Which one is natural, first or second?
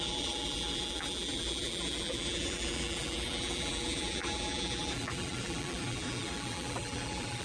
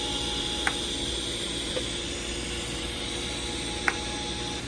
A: second